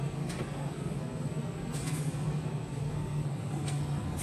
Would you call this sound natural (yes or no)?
no